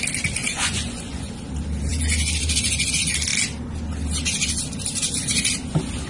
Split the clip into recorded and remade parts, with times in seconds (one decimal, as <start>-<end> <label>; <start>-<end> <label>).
0.0-0.4 recorded; 0.4-1.3 remade; 1.3-6.1 recorded